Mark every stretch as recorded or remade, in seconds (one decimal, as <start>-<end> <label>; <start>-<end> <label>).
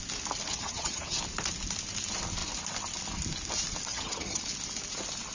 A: 0.0-0.5 recorded; 0.5-1.2 remade; 1.2-3.9 recorded; 3.9-4.4 remade; 4.4-5.3 recorded